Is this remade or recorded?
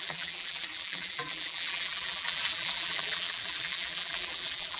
remade